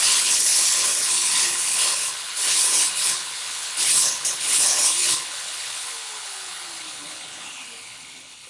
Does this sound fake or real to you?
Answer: fake